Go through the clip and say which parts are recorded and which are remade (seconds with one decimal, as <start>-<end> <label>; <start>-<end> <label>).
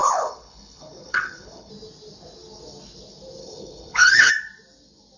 0.0-1.7 remade; 1.7-3.4 recorded; 3.4-4.3 remade; 4.3-5.2 recorded